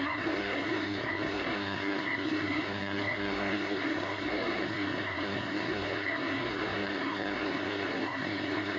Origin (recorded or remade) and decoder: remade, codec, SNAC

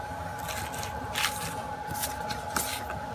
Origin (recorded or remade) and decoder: recorded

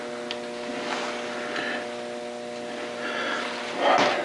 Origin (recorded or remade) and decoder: recorded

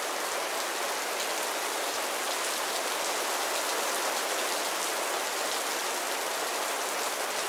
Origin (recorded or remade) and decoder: recorded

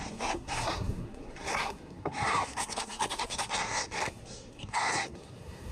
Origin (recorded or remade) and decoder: remade, codec, SNAC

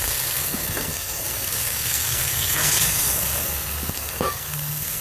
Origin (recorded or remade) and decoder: remade, codec, SNAC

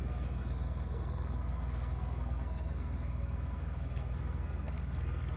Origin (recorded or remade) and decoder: remade, codec, SNAC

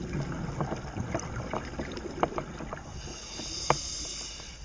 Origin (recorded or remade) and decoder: recorded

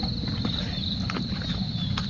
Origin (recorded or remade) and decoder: recorded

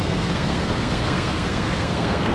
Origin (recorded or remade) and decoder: remade, codec, SNAC